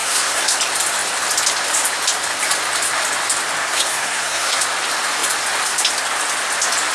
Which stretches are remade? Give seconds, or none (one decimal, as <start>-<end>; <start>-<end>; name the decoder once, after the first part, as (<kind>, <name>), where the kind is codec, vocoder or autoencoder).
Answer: 0.0-0.6 (codec, SNAC); 3.6-4.6